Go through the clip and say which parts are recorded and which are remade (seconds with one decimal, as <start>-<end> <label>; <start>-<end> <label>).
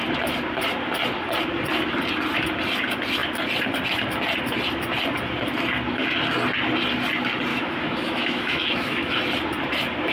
0.0-7.5 recorded; 7.5-9.2 remade; 9.2-10.1 recorded